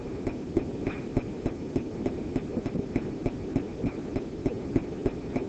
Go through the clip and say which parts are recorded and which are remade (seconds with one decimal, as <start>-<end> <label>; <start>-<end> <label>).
0.0-5.5 recorded